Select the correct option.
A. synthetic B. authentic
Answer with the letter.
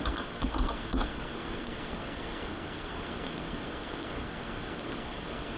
A